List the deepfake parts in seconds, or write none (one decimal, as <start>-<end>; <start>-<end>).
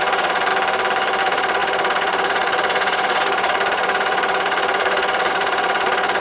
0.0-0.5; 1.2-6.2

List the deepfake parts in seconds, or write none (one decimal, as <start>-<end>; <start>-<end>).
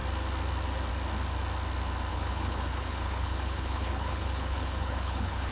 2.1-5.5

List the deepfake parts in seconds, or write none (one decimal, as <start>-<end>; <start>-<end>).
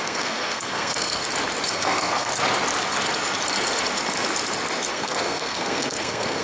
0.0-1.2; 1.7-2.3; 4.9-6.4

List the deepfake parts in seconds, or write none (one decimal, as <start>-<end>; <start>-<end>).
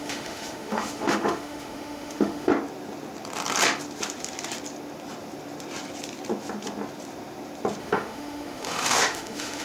0.0-2.5; 7.8-9.6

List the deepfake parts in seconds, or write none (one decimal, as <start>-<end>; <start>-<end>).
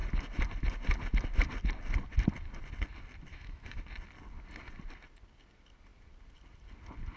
3.3-3.8